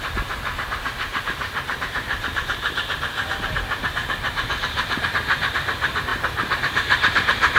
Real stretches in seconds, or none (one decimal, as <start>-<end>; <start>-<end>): 0.0-1.1; 5.1-6.1

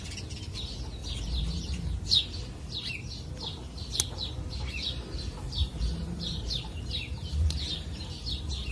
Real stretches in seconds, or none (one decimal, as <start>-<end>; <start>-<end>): 0.0-1.0; 2.0-5.6

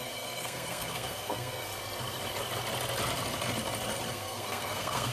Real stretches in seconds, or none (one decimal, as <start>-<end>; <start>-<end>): 1.7-4.1

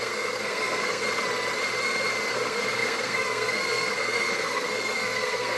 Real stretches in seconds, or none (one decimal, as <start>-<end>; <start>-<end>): 1.0-2.3

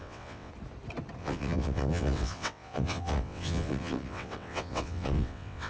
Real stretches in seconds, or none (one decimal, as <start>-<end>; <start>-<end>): 0.5-1.2

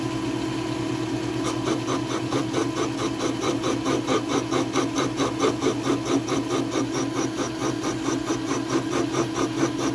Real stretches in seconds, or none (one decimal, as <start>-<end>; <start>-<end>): 0.0-9.9

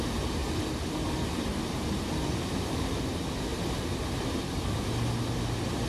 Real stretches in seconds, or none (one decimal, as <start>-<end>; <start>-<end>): 0.0-0.4; 3.1-5.9